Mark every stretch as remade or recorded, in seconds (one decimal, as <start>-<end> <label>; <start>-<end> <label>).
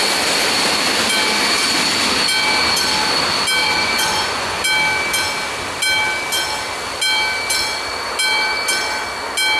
0.0-3.6 recorded; 3.6-4.6 remade; 4.6-9.6 recorded